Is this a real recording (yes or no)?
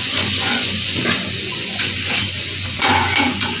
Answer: no